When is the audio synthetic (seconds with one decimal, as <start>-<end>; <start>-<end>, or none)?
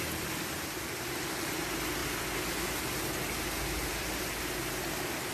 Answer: none